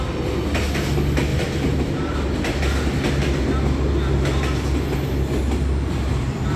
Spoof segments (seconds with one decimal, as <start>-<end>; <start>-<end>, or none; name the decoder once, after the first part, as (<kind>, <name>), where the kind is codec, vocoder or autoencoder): 1.3-1.8 (vocoder, BigVGAN v2); 6.1-6.6